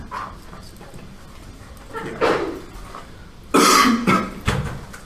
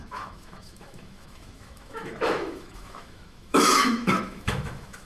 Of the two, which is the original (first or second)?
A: first